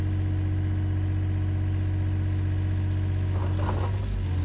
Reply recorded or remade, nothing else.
recorded